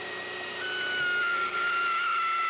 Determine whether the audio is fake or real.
real